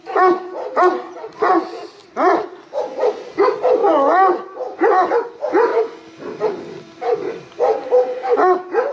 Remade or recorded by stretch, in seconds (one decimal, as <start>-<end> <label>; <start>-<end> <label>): 0.0-8.9 recorded